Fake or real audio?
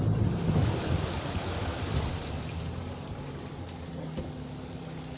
real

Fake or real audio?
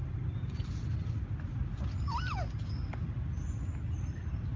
real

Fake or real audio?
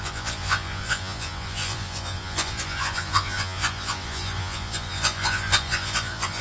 fake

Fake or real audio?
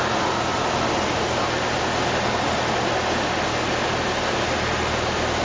real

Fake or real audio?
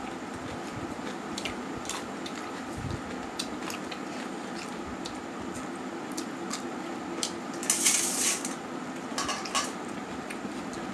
real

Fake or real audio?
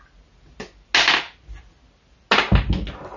real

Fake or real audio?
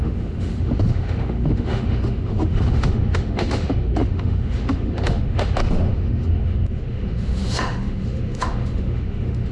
fake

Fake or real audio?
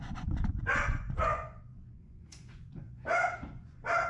fake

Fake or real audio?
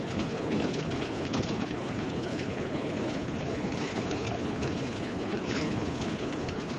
fake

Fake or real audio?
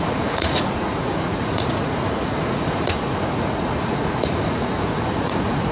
fake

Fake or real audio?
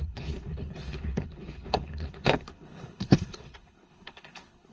fake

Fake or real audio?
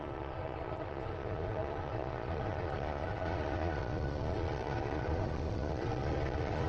fake